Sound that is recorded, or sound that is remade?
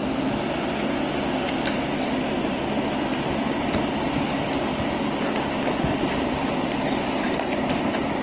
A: recorded